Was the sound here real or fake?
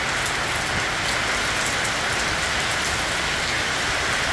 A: real